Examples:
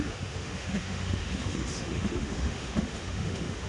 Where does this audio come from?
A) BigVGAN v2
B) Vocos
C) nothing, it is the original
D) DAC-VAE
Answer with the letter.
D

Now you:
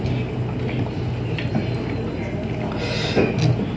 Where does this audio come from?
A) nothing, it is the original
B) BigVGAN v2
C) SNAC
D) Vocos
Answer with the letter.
A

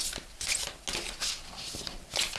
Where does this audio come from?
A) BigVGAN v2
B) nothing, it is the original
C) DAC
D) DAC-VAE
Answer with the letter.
B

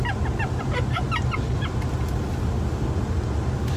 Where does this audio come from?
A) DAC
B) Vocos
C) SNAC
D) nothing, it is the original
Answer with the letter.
D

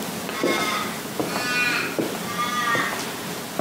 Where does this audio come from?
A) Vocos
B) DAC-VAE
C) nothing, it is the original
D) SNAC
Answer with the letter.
C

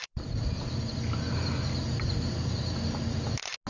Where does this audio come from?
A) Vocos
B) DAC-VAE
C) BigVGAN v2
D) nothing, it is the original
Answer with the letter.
D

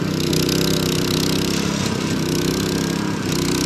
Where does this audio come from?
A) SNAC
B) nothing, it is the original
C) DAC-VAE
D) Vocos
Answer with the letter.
B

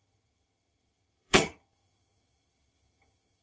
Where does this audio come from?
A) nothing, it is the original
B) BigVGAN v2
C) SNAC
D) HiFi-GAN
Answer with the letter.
D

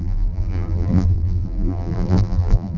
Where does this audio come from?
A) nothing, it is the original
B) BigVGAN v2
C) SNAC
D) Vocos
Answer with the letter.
B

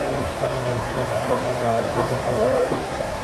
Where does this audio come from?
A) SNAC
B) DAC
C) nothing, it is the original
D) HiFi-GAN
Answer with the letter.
A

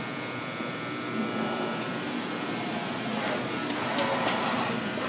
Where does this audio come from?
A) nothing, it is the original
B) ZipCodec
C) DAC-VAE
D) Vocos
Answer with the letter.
A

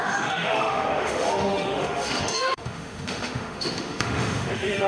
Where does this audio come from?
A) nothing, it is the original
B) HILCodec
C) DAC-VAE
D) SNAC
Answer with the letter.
C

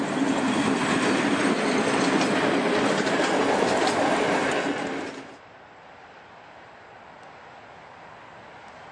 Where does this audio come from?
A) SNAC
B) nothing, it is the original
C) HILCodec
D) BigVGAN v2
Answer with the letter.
B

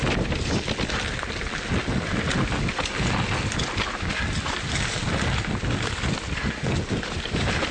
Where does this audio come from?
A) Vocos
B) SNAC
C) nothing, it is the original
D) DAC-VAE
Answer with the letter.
C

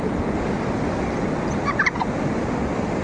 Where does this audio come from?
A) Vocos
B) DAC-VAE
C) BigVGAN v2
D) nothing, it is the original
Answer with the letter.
D